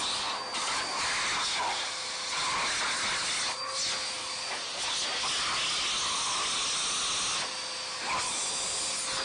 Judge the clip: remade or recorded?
recorded